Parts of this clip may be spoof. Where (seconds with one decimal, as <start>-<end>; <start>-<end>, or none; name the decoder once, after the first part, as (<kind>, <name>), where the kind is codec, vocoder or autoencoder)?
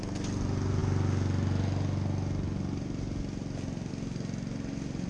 none